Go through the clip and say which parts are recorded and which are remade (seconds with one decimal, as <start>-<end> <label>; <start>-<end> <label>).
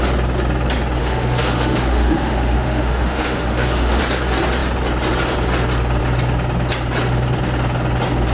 0.0-1.0 recorded; 1.0-4.0 remade; 4.0-8.3 recorded